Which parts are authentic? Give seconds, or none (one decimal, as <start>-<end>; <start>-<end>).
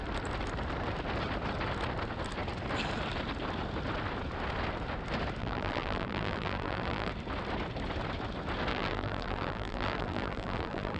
0.0-5.4; 7.1-8.7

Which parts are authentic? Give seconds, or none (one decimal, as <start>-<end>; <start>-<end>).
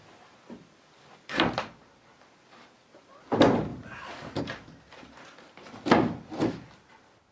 0.0-7.3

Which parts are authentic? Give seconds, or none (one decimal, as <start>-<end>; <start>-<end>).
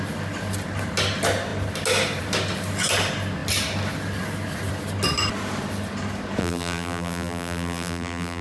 0.0-6.4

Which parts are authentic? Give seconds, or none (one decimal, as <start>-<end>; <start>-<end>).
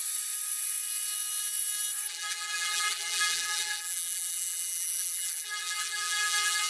0.0-2.1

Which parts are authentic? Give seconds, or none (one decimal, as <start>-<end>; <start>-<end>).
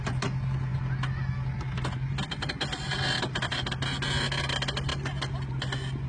0.0-6.1